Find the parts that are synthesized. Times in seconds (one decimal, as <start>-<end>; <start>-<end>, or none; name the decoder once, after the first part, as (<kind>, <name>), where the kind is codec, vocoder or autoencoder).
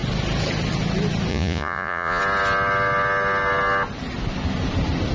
1.3-2.2 (vocoder, Vocos)